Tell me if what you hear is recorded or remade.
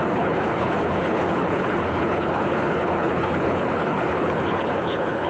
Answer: remade